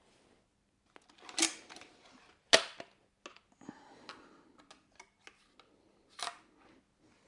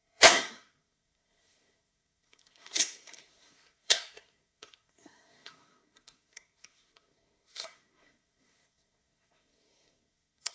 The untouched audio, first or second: first